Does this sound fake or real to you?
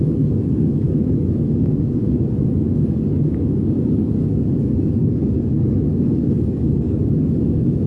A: fake